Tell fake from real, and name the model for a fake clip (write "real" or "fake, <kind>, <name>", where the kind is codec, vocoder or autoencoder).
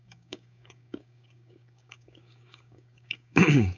fake, codec, DAC